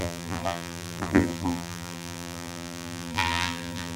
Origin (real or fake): fake